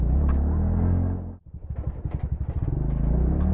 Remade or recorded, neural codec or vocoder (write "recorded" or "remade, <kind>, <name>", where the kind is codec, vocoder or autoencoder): recorded